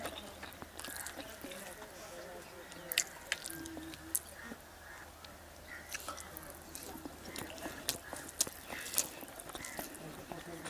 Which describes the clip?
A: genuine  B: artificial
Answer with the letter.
A